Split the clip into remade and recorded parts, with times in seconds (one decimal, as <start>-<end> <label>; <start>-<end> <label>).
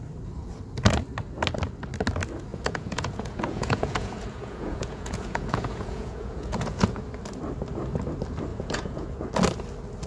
0.0-2.5 recorded; 2.5-7.0 remade; 7.0-8.5 recorded; 8.5-9.1 remade; 9.1-10.1 recorded